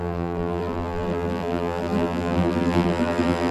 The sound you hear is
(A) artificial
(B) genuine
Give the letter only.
A